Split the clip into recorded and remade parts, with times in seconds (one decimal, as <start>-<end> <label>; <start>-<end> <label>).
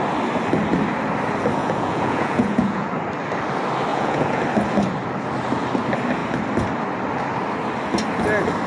0.0-1.6 recorded; 1.6-2.9 remade; 2.9-3.9 recorded; 3.9-4.4 remade; 4.4-8.7 recorded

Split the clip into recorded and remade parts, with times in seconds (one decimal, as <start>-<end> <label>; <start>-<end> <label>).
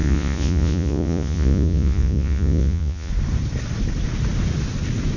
0.0-3.1 remade; 3.1-5.2 recorded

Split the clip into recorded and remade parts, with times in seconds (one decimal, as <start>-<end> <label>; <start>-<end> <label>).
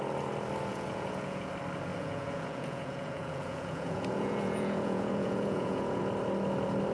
0.0-0.7 recorded; 0.7-1.5 remade; 1.5-1.9 recorded; 1.9-6.0 remade; 6.0-6.9 recorded